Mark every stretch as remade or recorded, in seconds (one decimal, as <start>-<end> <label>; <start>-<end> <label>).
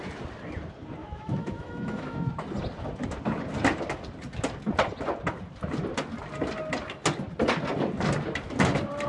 0.0-1.0 recorded; 1.0-2.3 remade; 2.3-9.1 recorded